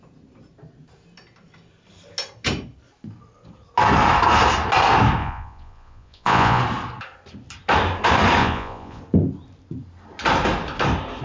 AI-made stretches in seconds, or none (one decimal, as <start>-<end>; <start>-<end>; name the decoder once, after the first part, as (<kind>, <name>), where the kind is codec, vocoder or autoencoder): 5.2-6.6 (vocoder, Vocos); 8.4-9.0

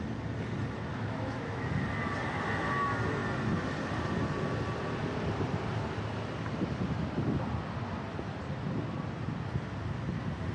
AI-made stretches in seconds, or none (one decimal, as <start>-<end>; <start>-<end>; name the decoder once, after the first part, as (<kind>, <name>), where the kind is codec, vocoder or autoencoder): 0.9-1.7 (autoencoder, DAC-VAE)

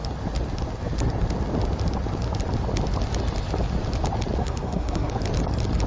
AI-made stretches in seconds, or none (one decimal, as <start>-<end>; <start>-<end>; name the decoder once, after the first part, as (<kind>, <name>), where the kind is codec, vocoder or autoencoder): 4.4-5.1 (codec, SNAC)